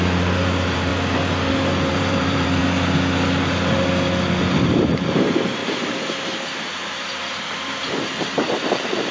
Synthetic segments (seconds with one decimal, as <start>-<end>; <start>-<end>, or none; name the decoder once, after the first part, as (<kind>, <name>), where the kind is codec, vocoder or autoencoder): 0.0-0.9 (vocoder, BigVGAN v2); 1.5-2.6; 4.5-9.1